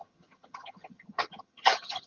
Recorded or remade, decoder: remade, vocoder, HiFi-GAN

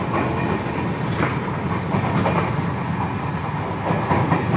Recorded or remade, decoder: recorded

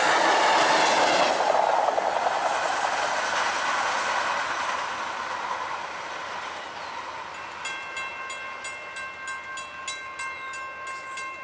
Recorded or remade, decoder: recorded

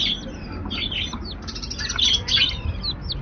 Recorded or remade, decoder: recorded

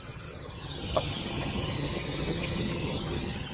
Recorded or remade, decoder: remade, vocoder, HiFi-GAN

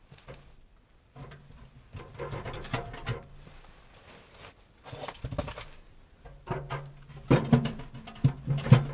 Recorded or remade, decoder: recorded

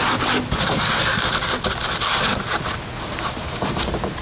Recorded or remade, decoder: recorded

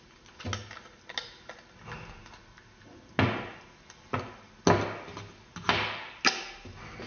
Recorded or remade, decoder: recorded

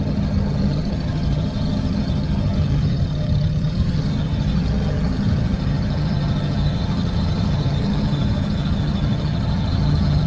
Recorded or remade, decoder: remade, vocoder, HiFi-GAN